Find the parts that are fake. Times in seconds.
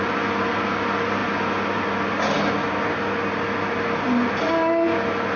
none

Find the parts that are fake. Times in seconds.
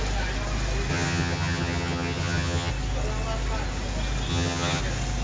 0.9-2.7 (vocoder, HiFi-GAN); 4.3-4.8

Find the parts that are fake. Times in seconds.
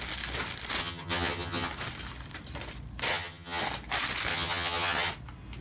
0.8-1.7 (vocoder, HiFi-GAN); 3.1-3.6; 4.3-5.1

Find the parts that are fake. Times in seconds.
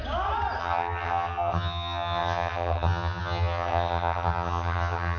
0.6-5.2 (vocoder, HiFi-GAN)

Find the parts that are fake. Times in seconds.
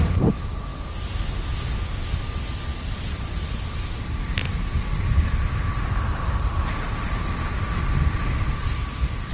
none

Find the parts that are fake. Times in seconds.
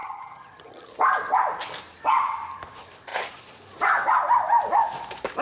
0.0-0.9 (vocoder, HiFi-GAN)